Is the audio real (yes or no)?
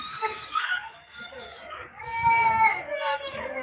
no